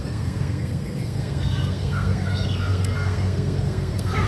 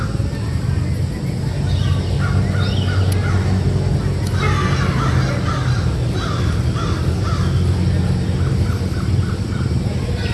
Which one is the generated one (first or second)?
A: first